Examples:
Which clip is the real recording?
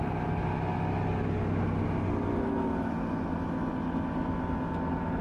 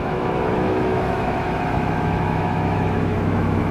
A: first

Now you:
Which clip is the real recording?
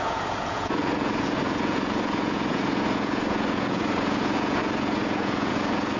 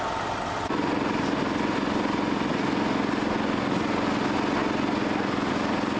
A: second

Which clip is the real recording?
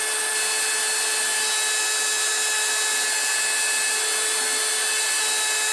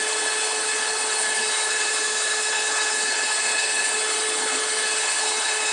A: first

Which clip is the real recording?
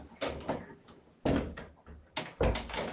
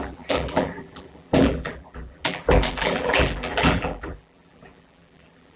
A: first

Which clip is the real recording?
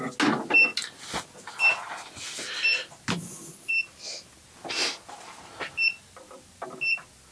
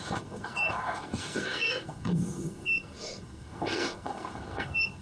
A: first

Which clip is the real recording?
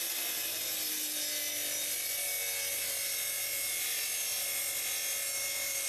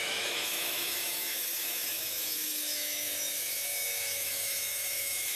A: first